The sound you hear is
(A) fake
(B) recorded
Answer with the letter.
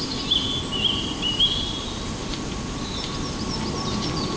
B